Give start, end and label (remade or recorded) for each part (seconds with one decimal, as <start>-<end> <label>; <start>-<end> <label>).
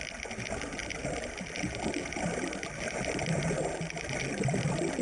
0.0-5.0 recorded